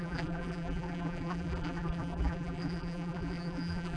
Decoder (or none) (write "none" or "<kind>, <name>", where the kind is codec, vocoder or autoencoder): vocoder, BigVGAN v2